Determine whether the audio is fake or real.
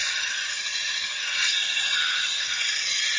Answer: real